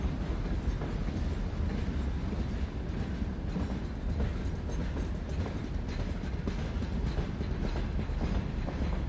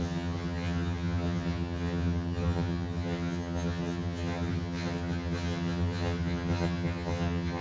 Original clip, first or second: first